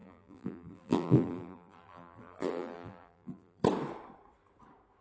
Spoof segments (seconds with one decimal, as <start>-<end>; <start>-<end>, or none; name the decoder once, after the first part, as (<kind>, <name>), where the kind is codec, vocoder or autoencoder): 0.0-3.6 (vocoder, BigVGAN v2)